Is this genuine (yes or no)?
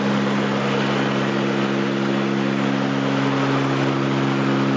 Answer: yes